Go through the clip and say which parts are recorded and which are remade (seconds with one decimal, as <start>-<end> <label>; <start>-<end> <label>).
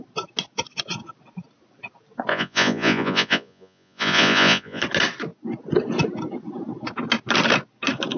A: 0.0-2.3 recorded; 2.3-4.8 remade; 4.8-8.2 recorded